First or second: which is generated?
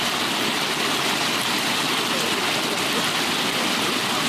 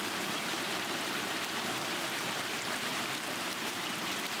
second